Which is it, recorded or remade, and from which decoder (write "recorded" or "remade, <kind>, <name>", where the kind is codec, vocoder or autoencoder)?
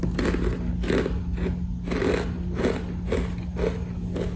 recorded